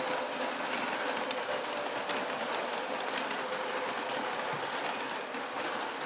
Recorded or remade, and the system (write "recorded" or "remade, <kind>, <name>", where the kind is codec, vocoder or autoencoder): recorded